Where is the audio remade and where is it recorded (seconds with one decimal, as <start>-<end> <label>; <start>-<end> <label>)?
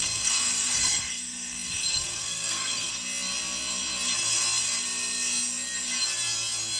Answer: 0.0-2.9 remade; 2.9-6.8 recorded